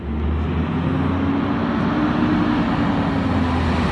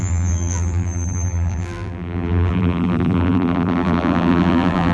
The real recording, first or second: first